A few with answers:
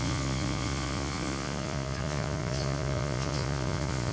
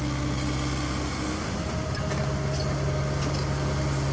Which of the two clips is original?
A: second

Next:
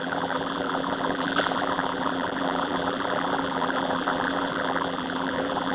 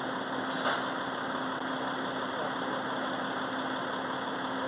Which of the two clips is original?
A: second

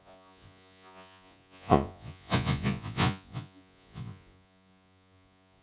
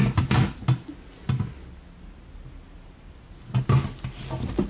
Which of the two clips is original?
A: second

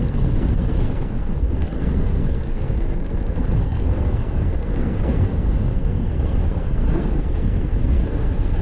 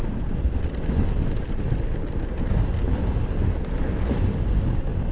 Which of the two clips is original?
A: second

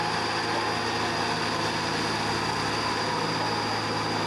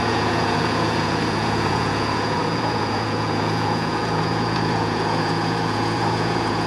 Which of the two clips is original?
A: first